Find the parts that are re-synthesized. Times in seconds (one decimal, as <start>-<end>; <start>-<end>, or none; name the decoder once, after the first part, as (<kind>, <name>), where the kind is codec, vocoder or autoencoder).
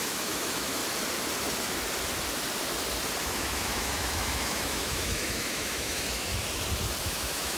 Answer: 0.0-0.8 (autoencoder, DAC-VAE); 3.2-6.3; 7.0-7.6